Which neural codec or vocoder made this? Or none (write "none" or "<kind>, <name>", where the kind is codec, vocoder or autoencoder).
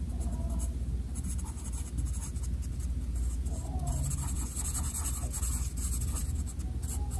none